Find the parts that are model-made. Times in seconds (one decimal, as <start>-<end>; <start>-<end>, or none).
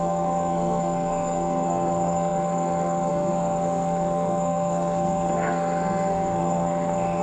0.0-7.2